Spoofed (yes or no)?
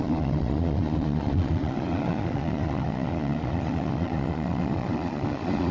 yes